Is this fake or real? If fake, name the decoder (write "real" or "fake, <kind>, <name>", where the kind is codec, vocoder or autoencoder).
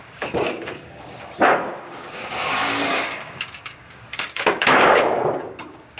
fake, codec, DAC